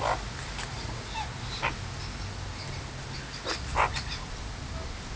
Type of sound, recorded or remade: recorded